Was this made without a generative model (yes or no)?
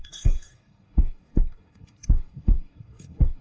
no